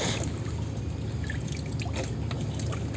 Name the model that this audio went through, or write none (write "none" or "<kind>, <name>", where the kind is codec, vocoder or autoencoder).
none